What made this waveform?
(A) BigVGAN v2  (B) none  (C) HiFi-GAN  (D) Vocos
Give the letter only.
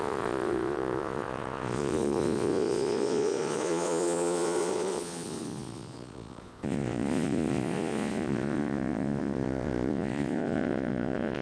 D